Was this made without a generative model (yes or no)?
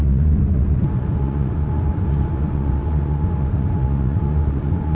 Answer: no